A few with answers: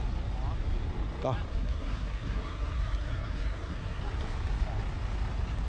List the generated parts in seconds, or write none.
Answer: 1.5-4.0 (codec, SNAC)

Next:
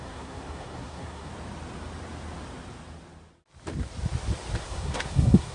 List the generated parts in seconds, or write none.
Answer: 0.0-1.3 (codec, SNAC); 4.6-5.5

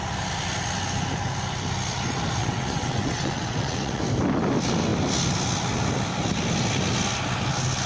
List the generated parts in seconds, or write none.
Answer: 2.4-4.0 (vocoder, WaveNeXt)

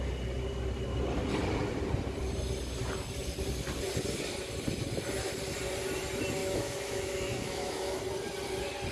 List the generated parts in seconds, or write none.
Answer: 6.4-8.0 (autoencoder, DAC-VAE)